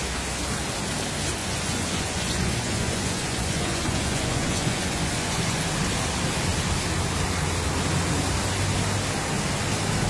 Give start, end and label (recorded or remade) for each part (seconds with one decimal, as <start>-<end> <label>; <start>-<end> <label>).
0.0-1.4 recorded; 1.4-5.6 remade; 5.6-10.1 recorded